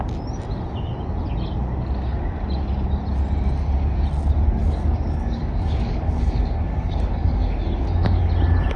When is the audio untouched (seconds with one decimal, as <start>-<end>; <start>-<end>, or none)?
0.0-4.6; 8.3-8.8